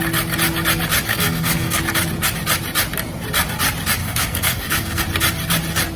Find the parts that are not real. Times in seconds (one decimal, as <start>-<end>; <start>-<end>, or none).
1.1-1.8; 4.0-5.0